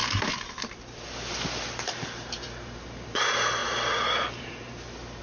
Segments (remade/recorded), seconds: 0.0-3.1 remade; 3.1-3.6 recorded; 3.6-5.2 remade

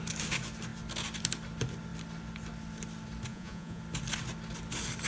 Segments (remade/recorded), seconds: 0.0-3.3 recorded; 3.3-3.8 remade; 3.8-5.1 recorded

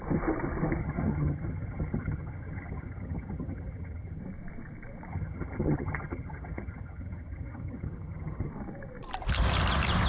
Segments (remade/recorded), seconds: 0.0-0.8 recorded; 0.8-4.2 remade; 4.2-5.1 recorded; 5.1-8.5 remade; 8.5-10.1 recorded

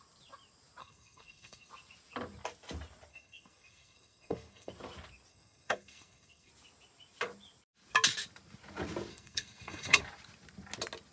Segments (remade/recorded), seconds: 0.0-0.8 recorded; 0.8-1.7 remade; 1.7-3.1 recorded; 3.1-4.7 remade; 4.7-5.3 recorded; 5.3-6.5 remade; 6.5-9.1 recorded; 9.1-10.0 remade; 10.0-11.1 recorded

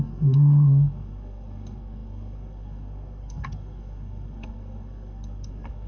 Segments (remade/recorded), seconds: 0.0-5.9 remade

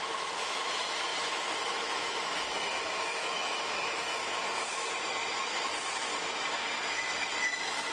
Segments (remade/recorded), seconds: 0.0-6.1 remade; 6.1-6.9 recorded; 6.9-7.9 remade

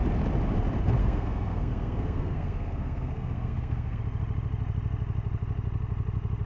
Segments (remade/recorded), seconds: 0.0-1.0 recorded; 1.0-4.0 remade; 4.0-6.5 recorded

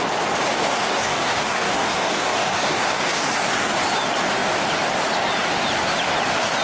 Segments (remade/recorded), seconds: 0.0-0.5 recorded; 0.5-3.8 remade; 3.8-6.6 recorded